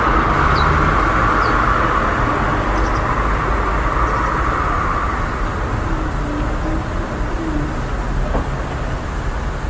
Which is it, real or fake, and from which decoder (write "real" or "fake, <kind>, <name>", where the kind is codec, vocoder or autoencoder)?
real